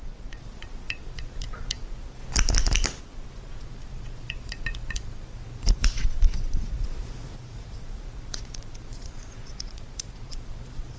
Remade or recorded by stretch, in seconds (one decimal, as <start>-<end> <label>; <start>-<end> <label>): 0.0-2.2 remade; 2.2-3.0 recorded; 3.0-11.0 remade